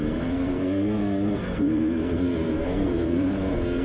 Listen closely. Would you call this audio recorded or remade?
remade